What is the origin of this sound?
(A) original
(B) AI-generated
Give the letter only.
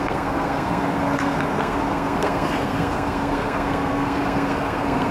B